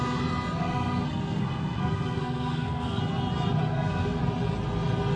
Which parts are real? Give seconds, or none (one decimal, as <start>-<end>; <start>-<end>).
0.0-0.6; 3.0-3.6; 4.2-5.2